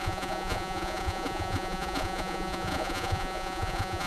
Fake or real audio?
fake